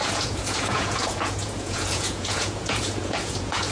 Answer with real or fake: fake